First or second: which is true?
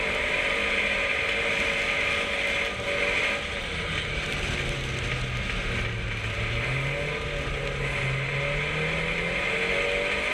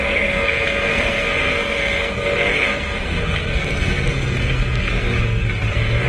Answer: first